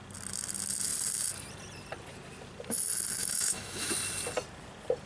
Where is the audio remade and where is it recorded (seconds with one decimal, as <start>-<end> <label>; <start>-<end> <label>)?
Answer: 0.0-3.2 recorded; 3.2-3.9 remade; 3.9-5.1 recorded